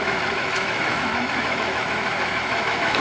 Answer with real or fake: fake